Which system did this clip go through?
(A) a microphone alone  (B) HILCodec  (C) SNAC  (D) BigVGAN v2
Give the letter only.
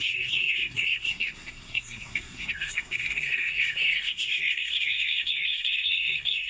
C